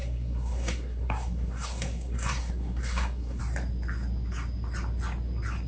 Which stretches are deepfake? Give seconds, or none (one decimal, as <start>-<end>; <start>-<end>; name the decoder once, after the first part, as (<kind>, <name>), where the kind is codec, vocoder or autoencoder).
0.0-3.4 (codec, SNAC)